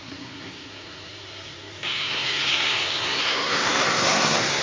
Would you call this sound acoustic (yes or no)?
no